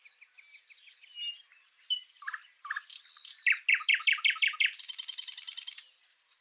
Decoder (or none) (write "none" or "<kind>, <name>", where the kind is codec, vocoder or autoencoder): none